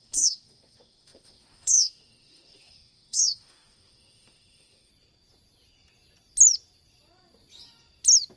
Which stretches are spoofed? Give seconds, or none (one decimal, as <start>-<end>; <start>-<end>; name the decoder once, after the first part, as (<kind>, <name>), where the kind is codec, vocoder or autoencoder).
0.0-4.9 (autoencoder, DAC-VAE)